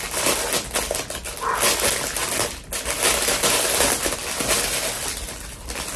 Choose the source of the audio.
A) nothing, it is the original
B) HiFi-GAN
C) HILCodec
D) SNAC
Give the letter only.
A